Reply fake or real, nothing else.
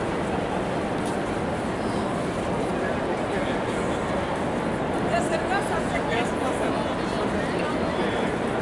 real